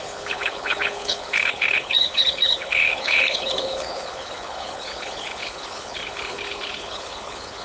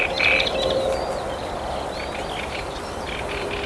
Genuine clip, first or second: second